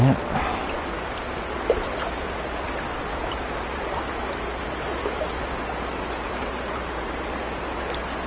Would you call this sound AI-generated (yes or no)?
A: no